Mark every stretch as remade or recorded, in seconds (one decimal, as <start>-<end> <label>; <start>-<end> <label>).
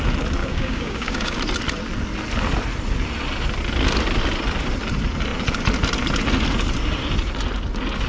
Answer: 0.0-0.4 recorded; 0.4-1.4 remade; 1.4-8.1 recorded